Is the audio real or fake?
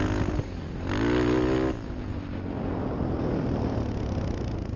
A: real